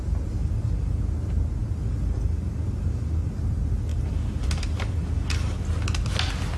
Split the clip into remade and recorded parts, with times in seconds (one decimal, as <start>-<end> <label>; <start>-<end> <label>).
0.0-0.4 recorded; 0.4-1.0 remade; 1.0-1.6 recorded; 1.6-3.3 remade; 3.3-3.9 recorded; 3.9-5.6 remade; 5.6-6.6 recorded